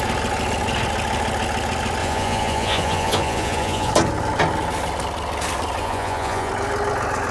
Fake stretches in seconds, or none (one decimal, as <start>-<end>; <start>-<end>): 2.0-3.9; 5.8-6.5